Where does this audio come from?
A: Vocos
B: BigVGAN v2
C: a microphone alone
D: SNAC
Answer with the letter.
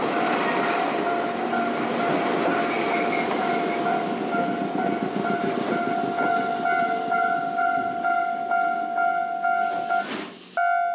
C